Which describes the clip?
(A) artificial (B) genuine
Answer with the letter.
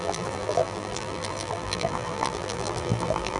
A